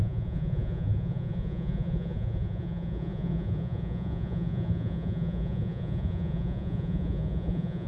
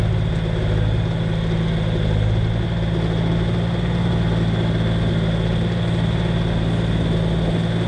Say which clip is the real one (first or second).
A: second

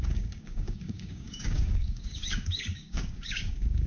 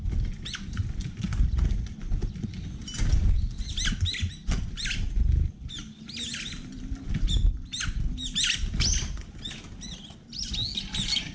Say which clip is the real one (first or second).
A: second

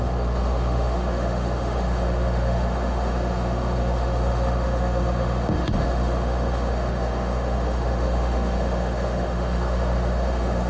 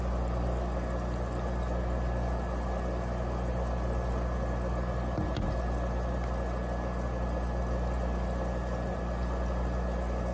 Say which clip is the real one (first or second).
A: second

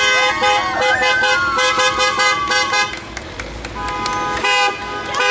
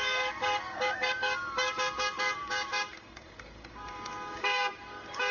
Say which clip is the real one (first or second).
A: first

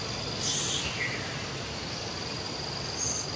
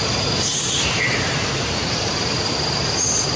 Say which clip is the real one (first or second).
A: first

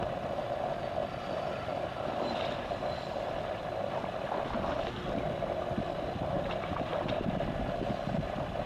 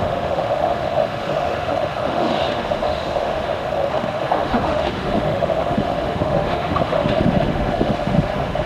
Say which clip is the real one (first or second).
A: first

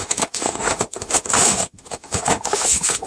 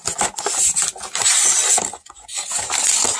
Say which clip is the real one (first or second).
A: second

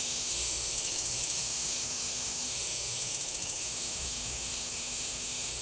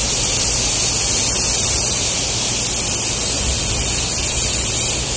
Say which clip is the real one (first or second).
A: second